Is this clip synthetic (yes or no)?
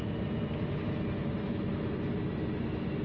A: no